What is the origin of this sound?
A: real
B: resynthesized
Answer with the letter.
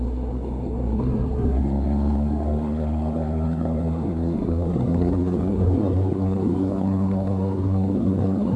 B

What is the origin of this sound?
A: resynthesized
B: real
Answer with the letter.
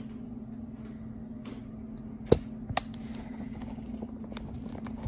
B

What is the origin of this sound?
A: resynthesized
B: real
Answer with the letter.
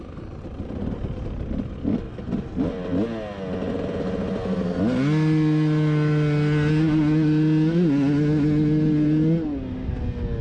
B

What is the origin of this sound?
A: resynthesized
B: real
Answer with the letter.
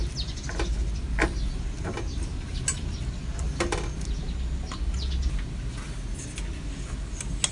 B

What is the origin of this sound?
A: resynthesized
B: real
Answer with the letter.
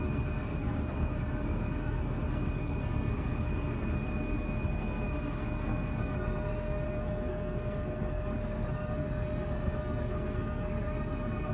A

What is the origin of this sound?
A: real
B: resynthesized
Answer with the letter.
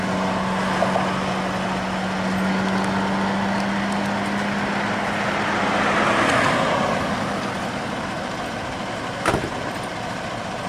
A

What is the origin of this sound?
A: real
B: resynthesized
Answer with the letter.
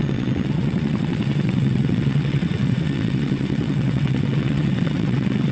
B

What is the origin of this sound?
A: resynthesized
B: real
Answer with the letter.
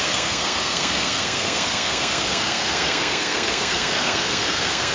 A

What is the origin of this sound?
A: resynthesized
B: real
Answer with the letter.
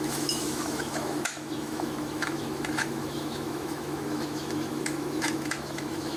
A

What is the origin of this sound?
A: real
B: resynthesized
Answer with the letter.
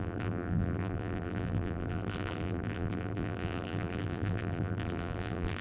B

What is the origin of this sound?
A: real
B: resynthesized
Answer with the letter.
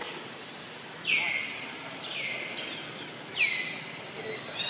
A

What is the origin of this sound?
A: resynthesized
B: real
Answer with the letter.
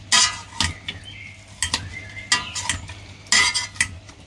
B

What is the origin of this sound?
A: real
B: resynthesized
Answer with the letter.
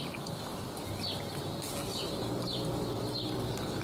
A